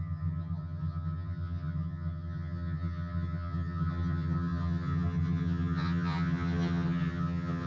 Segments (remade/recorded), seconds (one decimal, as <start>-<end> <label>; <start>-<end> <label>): 0.0-7.7 remade